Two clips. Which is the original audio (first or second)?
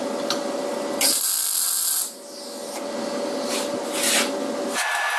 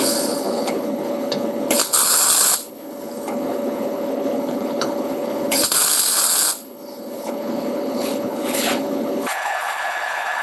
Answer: first